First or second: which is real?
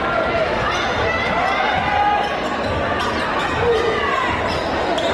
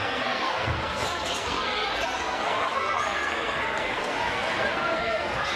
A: first